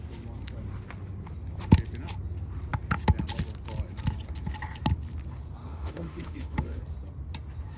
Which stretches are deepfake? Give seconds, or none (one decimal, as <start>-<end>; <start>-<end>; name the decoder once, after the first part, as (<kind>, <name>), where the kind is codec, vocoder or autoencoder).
5.6-6.8 (autoencoder, DAC-VAE)